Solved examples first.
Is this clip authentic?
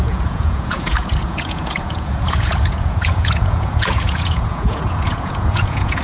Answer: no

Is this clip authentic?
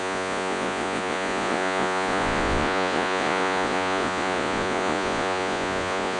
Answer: no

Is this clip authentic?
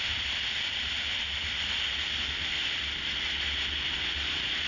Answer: yes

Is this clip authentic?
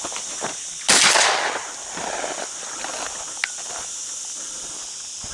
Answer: yes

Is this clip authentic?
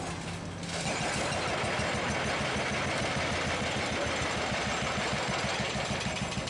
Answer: yes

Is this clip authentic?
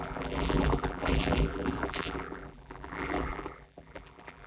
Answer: no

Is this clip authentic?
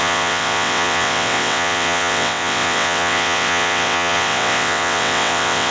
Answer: no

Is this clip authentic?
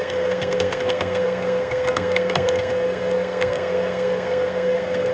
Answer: no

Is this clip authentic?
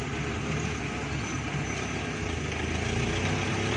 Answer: yes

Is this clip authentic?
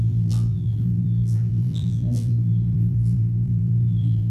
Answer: no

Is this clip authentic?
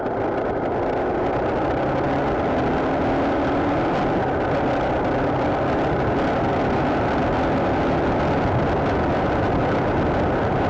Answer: yes